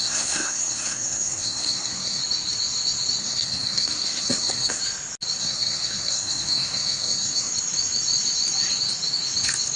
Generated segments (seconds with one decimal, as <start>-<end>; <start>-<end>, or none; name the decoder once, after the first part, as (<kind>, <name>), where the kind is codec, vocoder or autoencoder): 0.0-2.2 (codec, SNAC); 3.2-4.8; 5.4-7.5